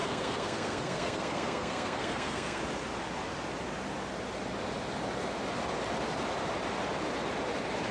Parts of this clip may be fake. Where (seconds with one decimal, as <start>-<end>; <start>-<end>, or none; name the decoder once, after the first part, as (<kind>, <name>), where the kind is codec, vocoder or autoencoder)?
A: 0.0-2.6 (codec, SNAC)